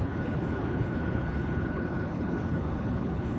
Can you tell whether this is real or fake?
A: fake